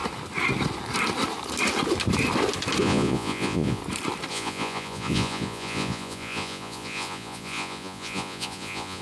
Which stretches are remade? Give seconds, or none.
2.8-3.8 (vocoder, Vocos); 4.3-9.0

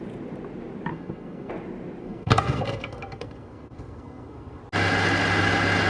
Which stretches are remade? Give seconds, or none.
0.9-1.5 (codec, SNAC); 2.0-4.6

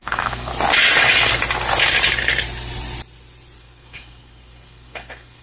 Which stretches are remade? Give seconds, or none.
0.0-0.5 (codec, SNAC); 3.6-5.4